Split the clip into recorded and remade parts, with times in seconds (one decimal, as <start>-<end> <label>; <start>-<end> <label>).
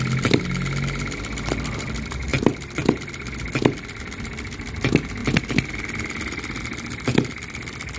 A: 0.0-8.0 recorded